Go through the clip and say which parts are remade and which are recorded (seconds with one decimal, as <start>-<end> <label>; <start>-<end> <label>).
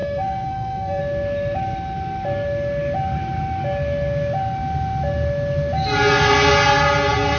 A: 0.0-1.0 remade; 1.0-7.4 recorded